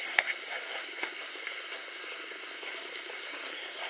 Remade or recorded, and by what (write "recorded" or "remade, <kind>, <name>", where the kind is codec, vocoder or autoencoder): remade, codec, SNAC